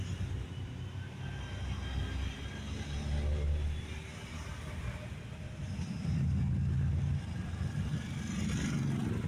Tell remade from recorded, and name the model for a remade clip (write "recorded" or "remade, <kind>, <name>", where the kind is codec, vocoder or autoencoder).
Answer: recorded